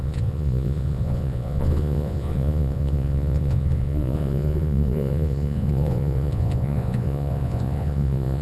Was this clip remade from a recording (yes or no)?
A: yes